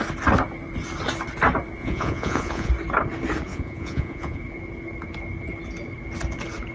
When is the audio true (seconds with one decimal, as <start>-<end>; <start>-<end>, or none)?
0.0-1.8; 2.7-3.5; 4.4-6.7